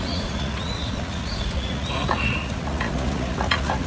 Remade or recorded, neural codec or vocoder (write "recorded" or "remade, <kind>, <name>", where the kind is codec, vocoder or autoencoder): remade, vocoder, Vocos